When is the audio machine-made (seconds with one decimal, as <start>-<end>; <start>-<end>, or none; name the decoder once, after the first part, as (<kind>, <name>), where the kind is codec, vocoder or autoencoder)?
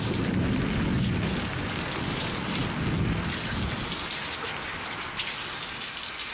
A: none